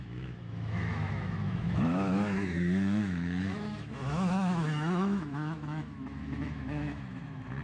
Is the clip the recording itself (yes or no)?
no